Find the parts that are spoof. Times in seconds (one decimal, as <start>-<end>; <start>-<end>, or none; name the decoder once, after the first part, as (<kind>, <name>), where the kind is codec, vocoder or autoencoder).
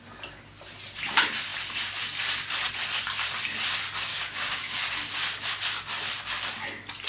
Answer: 4.1-4.8 (codec, DAC)